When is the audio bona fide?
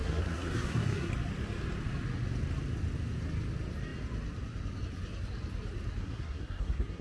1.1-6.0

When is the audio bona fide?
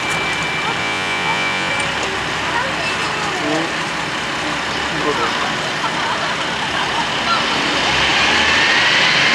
0.0-0.8; 1.7-9.3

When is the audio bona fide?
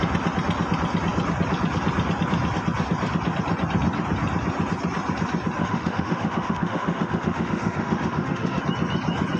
0.0-5.6; 8.6-9.4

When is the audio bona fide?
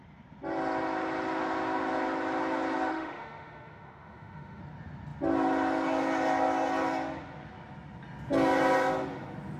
0.0-2.9; 4.6-9.6